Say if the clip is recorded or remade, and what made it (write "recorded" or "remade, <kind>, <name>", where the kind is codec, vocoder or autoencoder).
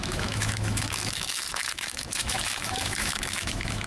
remade, autoencoder, DAC-VAE